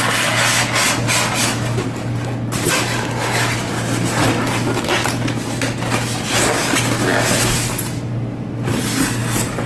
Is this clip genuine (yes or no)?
yes